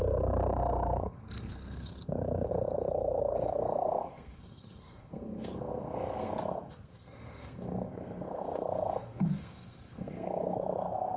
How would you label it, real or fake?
fake